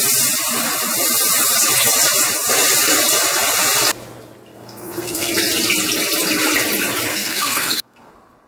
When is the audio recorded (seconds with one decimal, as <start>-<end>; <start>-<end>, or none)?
0.0-4.5; 5.3-7.1; 8.1-8.5